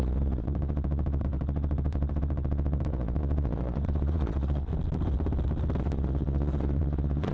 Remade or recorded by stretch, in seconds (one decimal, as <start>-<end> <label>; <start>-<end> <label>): 0.0-4.7 remade; 4.7-5.8 recorded; 5.8-7.3 remade

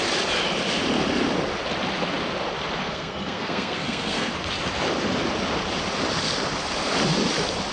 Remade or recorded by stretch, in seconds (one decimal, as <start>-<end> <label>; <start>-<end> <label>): 0.0-2.8 recorded; 2.8-4.3 remade; 4.3-7.7 recorded

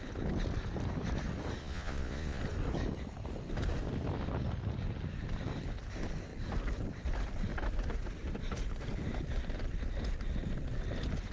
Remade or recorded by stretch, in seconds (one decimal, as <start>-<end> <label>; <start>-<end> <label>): 0.0-1.6 recorded; 1.6-2.4 remade; 2.4-11.3 recorded

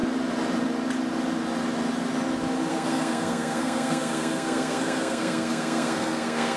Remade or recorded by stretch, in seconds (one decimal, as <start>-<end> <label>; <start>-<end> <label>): 0.0-2.7 recorded; 2.7-6.6 remade